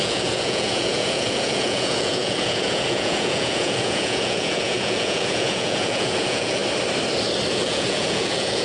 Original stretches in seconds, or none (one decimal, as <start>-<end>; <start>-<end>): 6.6-7.5